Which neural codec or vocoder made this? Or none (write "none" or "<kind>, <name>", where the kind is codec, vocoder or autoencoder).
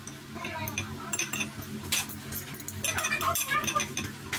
none